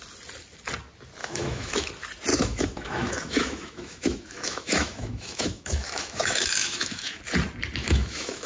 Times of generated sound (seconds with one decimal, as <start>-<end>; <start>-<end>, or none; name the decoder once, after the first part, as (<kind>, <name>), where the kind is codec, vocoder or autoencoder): 1.2-1.9 (autoencoder, DAC-VAE); 2.3-7.2; 7.8-8.5